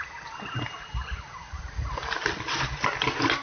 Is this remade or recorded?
recorded